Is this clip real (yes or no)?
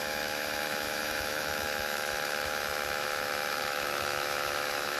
no